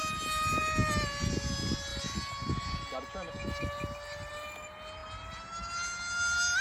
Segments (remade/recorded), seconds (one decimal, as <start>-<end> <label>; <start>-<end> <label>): 0.0-6.6 recorded